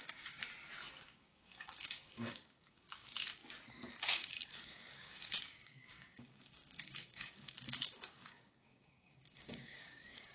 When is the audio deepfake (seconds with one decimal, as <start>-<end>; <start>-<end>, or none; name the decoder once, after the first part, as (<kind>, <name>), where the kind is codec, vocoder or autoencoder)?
0.0-0.4 (codec, DAC); 1.0-3.4; 4.0-10.3